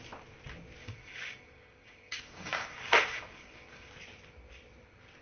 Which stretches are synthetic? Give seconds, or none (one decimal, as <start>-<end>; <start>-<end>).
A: 0.8-3.9